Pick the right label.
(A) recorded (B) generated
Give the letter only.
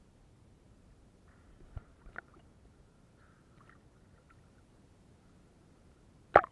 A